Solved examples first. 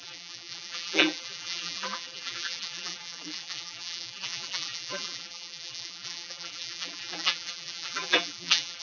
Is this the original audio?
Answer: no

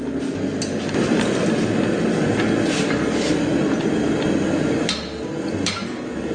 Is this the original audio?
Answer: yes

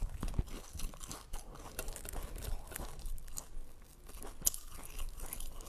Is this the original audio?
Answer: yes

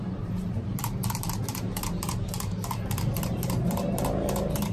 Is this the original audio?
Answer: no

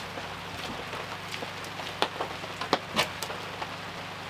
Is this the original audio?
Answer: yes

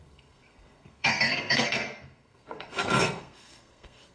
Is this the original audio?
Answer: no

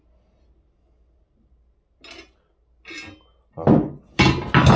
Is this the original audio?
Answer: yes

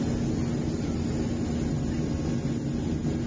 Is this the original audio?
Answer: yes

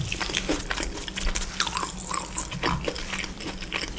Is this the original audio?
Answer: yes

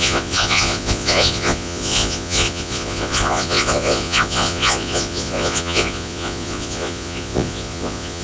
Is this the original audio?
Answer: no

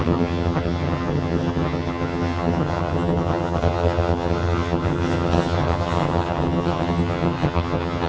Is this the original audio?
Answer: no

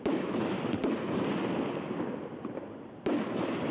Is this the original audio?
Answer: yes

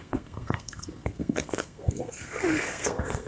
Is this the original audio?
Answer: no